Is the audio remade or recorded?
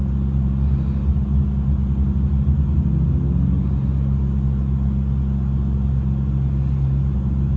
recorded